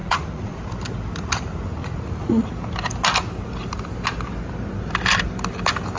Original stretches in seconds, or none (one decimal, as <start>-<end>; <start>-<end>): 0.6-1.8; 2.5-6.0